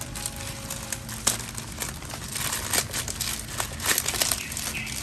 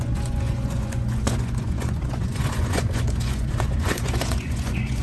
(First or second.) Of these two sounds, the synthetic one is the second